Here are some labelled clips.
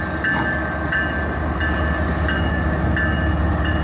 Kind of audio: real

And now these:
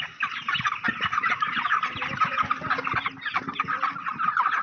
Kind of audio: real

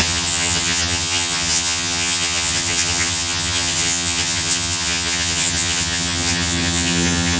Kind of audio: fake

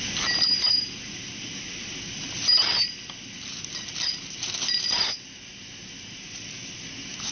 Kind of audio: real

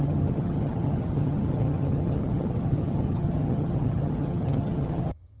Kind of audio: fake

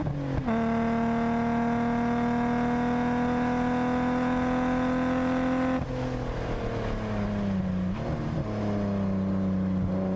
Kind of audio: real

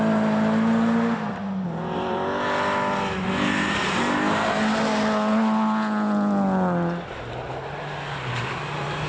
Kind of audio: real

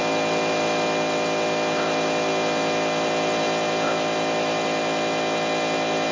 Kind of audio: real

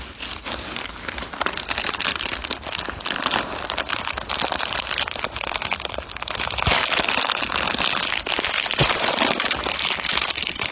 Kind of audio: real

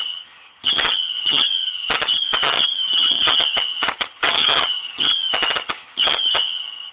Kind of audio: fake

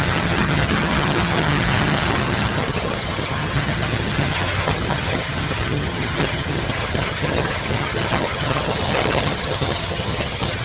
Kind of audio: fake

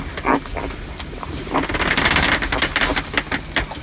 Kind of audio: real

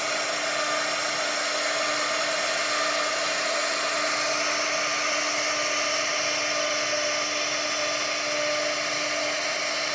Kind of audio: real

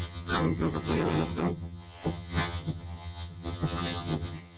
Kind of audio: fake